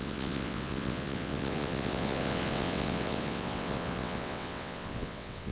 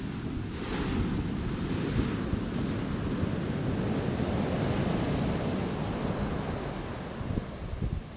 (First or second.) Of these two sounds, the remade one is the first